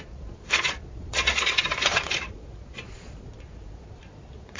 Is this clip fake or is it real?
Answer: fake